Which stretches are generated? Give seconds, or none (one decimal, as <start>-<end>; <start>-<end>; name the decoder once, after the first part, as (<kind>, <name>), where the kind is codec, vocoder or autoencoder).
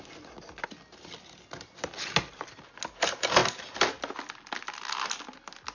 none